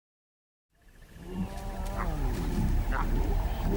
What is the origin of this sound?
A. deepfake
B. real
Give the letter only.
B